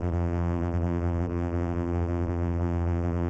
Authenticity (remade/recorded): remade